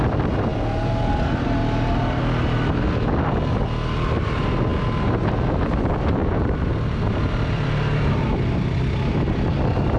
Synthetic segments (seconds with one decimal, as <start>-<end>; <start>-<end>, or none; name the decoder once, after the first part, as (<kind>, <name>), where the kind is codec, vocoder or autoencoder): 1.6-2.2 (vocoder, BigVGAN v2); 6.2-8.2